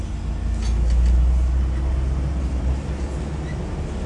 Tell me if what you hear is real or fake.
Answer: real